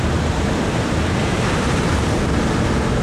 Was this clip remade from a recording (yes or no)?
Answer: no